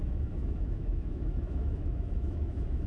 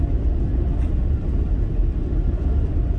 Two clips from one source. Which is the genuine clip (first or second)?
second